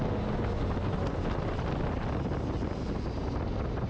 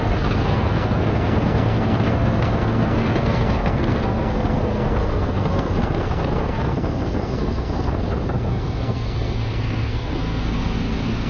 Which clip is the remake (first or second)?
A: second